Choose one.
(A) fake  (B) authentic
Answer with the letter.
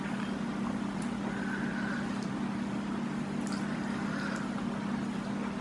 B